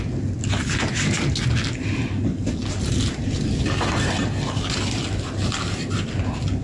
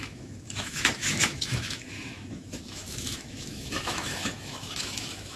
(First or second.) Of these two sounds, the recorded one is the first